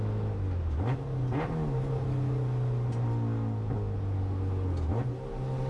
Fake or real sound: real